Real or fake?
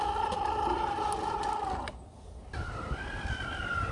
real